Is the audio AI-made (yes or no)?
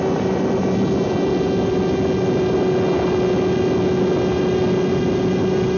no